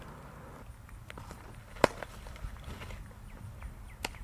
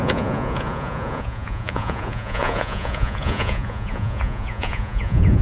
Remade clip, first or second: second